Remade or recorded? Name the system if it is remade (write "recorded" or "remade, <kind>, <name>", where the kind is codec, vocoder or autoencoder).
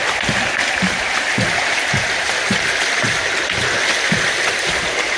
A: recorded